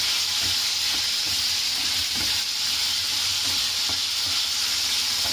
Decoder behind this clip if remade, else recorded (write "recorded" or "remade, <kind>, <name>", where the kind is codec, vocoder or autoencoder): recorded